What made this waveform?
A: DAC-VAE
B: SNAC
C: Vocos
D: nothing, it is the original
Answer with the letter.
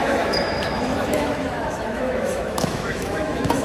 A